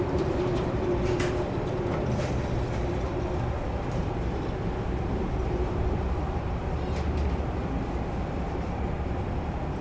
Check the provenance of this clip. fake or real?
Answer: fake